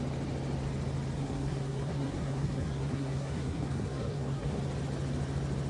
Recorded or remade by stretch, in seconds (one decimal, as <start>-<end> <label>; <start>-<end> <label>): 0.0-1.2 recorded; 1.2-4.6 remade; 4.6-5.7 recorded